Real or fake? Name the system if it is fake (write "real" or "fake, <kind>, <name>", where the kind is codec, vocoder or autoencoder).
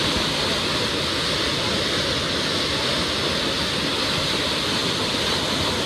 real